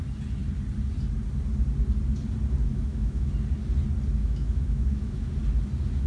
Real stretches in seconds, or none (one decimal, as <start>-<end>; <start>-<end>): 0.0-2.7; 3.3-4.2; 5.3-6.1

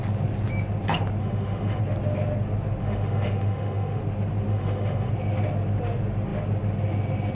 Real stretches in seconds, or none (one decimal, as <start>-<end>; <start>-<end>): 0.0-1.2; 1.8-2.8; 4.0-4.5; 5.1-7.3

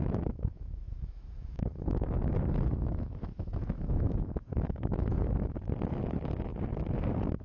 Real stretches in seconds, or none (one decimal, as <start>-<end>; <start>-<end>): 6.5-7.4